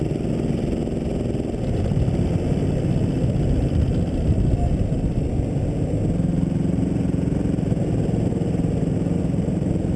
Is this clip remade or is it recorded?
recorded